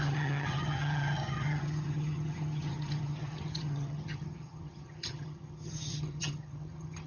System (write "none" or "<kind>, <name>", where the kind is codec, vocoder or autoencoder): vocoder, HiFi-GAN